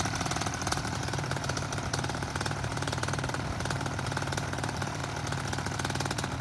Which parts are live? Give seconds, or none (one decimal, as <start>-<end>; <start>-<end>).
5.0-6.4